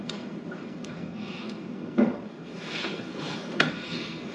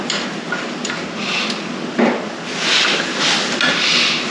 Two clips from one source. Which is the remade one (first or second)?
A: first